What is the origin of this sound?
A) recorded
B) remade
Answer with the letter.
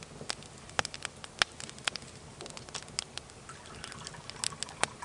A